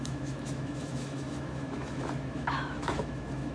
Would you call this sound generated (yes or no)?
yes